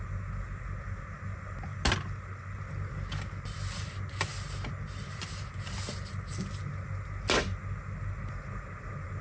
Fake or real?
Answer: real